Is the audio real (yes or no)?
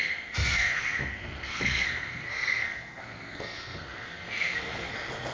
no